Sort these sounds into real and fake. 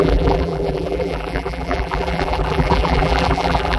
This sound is fake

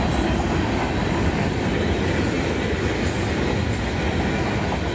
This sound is real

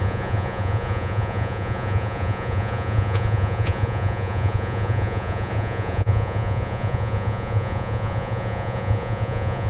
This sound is fake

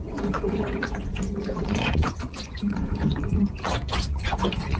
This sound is fake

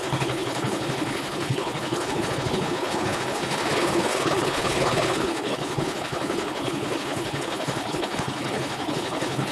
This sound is fake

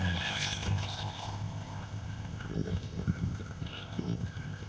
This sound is fake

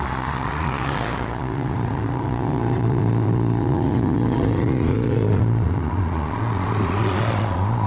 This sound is fake